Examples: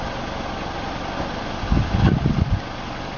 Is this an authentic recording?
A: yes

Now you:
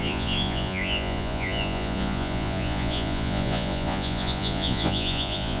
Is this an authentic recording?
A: no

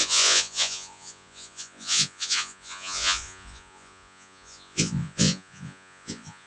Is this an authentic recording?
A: no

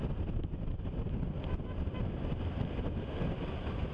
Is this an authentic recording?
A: yes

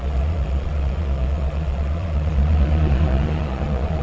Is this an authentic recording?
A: no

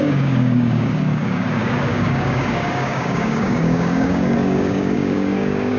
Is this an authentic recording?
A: no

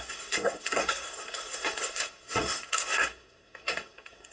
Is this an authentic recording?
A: no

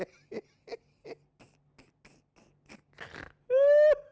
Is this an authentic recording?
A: yes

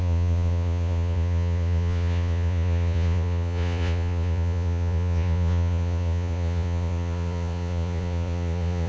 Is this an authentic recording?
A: no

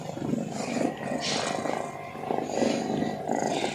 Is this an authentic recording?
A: yes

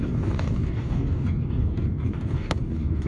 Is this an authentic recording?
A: no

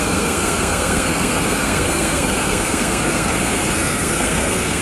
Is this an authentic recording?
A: no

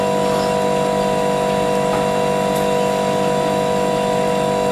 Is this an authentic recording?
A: yes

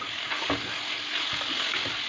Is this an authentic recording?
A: yes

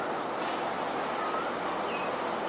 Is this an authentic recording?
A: yes